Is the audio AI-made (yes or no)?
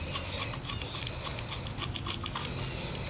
no